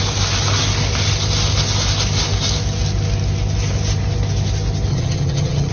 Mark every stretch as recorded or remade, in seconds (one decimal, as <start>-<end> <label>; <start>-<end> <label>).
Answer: 0.0-4.9 recorded; 4.9-5.7 remade